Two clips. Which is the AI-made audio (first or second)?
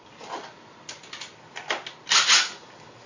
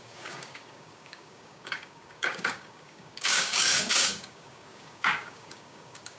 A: second